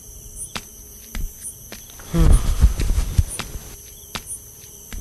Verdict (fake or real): real